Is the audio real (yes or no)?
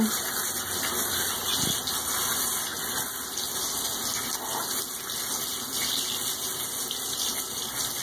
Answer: yes